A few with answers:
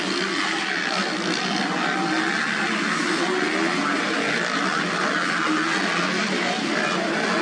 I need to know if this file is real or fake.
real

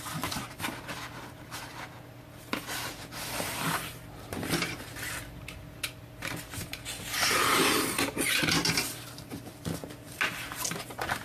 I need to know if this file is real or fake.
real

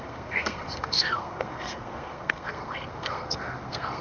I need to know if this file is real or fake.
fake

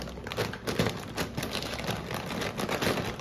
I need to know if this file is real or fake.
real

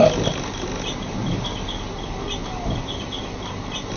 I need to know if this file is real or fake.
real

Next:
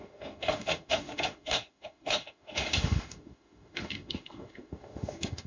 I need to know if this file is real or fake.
fake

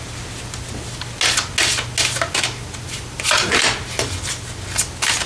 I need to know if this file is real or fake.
real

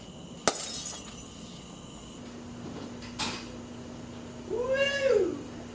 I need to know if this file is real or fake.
real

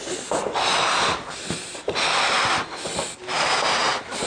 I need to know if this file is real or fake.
real